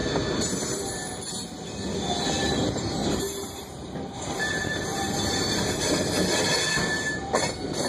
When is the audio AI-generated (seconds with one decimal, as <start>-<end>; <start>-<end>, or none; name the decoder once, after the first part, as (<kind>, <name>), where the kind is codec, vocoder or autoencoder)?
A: 3.0-4.5 (vocoder, BigVGAN v2); 4.9-7.9